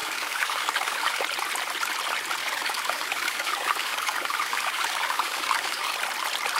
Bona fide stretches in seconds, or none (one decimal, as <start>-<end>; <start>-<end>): 1.2-2.4; 5.9-6.6